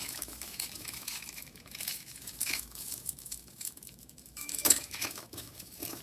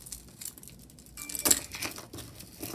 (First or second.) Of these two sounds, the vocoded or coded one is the first